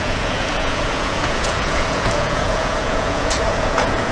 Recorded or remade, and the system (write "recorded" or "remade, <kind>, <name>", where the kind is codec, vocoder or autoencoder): remade, vocoder, Vocos